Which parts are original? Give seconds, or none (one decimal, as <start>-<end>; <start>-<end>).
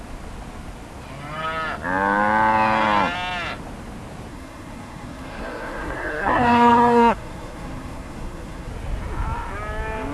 0.0-4.3; 8.7-10.1